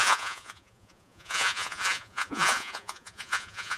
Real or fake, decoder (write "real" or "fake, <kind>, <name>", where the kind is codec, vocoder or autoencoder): fake, vocoder, Vocos